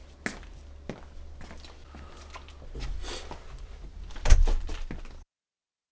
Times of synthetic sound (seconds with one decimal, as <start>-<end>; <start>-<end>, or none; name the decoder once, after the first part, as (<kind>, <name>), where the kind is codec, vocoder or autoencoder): none